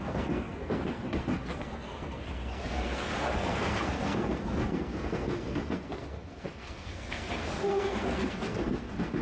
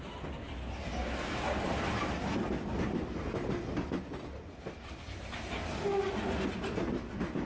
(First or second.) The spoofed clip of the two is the first